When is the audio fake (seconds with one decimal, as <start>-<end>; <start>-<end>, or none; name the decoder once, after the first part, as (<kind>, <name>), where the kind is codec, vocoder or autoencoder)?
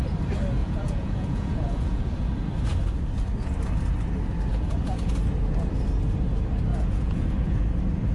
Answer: 0.6-2.3 (vocoder, Vocos); 4.5-5.1; 6.7-7.6